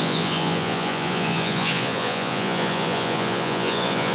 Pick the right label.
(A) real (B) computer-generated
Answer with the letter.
B